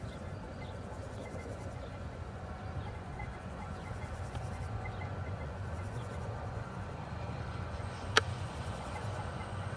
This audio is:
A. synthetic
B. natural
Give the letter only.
A